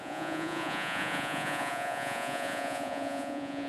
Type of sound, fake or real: fake